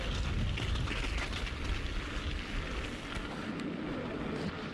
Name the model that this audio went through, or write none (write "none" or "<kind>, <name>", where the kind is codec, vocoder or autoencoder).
none